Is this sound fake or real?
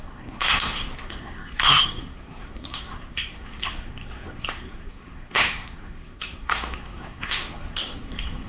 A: fake